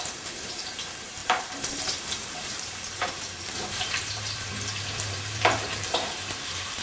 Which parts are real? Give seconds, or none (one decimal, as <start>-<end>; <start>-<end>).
none